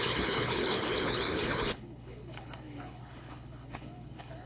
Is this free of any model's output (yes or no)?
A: no